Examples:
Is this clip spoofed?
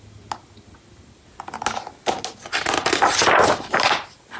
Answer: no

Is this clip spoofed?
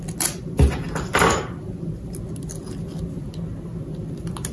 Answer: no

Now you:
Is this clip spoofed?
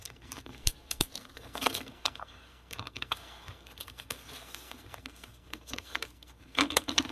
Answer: yes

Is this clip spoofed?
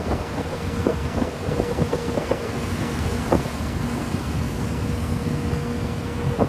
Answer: yes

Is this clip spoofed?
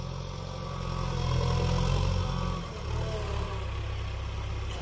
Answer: no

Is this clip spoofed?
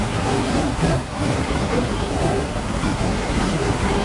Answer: yes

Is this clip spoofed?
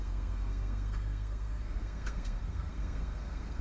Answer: yes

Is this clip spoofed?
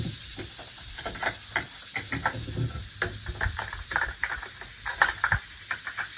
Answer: no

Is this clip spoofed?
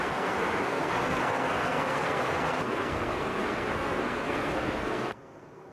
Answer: yes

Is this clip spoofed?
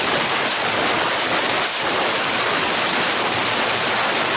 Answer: no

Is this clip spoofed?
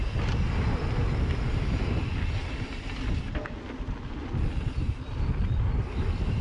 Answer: no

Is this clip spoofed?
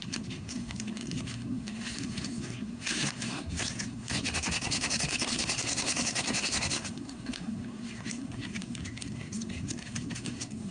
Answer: yes